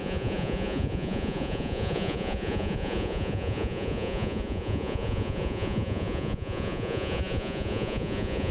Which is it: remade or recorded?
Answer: remade